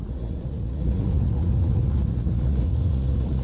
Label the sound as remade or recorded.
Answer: remade